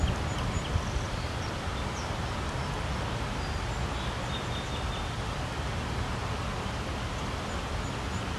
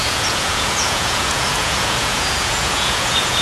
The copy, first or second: second